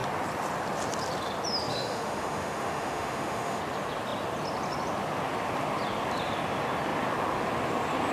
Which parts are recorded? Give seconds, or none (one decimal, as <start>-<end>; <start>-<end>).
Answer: 0.0-1.7; 3.6-8.1